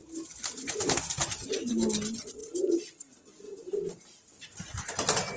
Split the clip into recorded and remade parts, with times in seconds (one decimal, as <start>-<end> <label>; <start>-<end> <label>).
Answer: 0.0-5.4 recorded

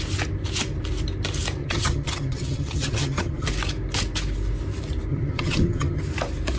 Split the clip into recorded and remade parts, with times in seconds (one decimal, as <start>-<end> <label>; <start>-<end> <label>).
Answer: 0.0-1.6 recorded; 1.6-3.5 remade; 3.5-5.1 recorded; 5.1-6.0 remade; 6.0-6.6 recorded

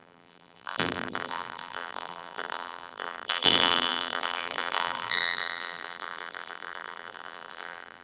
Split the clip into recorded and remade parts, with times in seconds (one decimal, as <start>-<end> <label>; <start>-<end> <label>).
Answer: 0.0-8.0 remade